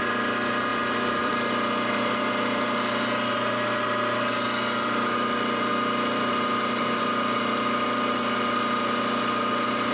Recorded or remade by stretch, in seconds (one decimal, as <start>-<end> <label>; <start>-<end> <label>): 0.0-0.7 recorded; 0.7-1.3 remade; 1.3-9.9 recorded